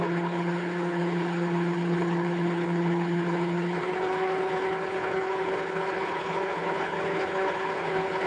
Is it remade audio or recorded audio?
remade